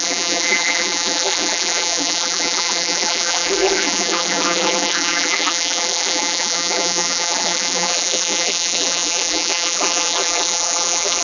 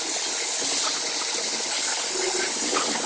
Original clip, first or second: second